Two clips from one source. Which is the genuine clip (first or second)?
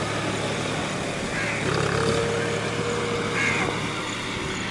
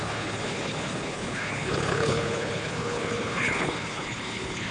first